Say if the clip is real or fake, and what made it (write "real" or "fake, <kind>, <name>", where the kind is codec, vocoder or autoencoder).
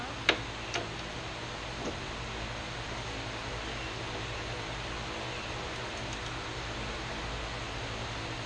real